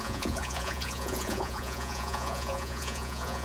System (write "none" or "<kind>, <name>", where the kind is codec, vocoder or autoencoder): vocoder, Vocos